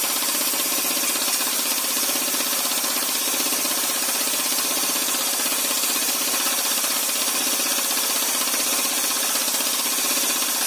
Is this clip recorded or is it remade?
recorded